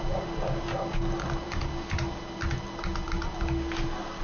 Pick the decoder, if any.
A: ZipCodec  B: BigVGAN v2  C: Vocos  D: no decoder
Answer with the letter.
D